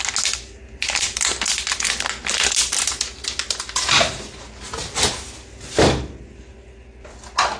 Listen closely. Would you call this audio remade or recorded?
recorded